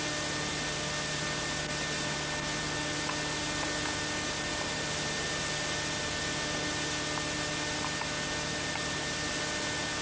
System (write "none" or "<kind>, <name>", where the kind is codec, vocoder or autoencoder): none